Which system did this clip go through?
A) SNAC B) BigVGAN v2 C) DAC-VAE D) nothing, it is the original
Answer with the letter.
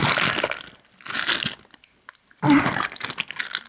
D